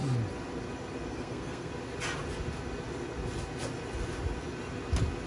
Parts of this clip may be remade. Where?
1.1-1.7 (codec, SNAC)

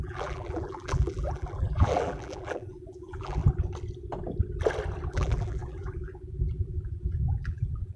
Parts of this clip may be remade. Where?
0.0-3.4 (vocoder, BigVGAN v2); 5.1-8.0

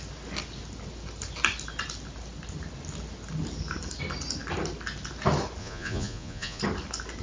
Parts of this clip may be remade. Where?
5.6-6.6 (vocoder, Vocos)